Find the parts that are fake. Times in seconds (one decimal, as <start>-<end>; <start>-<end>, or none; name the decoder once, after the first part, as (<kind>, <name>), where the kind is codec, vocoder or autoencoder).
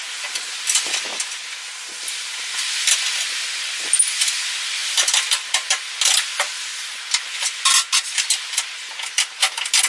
1.1-1.8 (vocoder, BigVGAN v2)